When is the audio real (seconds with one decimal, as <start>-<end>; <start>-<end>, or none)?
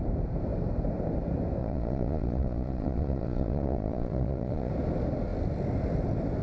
0.0-1.6; 4.7-6.4